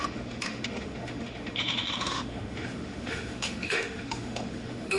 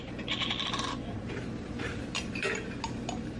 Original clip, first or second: second